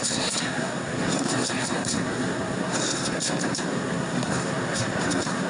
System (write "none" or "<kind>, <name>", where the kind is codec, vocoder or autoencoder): codec, SNAC